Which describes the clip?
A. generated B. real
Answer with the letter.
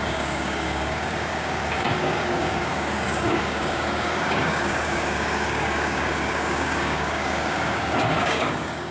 A